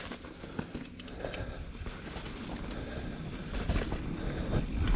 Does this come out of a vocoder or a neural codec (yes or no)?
no